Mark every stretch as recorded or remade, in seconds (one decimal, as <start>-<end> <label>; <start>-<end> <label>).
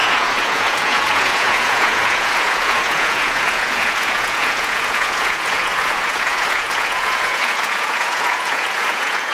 0.0-9.3 remade